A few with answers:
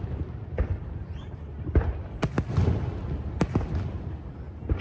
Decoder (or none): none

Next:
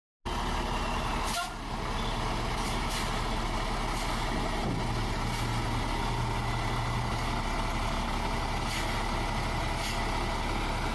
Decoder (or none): none